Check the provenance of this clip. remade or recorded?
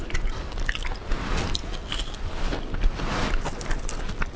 recorded